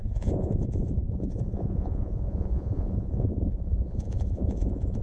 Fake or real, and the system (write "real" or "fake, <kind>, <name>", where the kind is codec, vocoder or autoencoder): fake, vocoder, Vocos